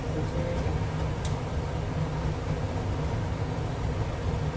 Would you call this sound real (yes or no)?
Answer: yes